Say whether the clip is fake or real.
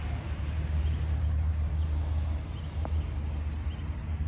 real